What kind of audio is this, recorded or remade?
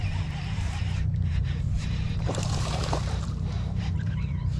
remade